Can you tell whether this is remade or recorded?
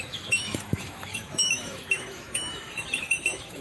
remade